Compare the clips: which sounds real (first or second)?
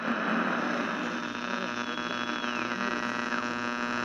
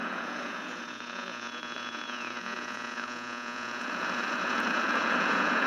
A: first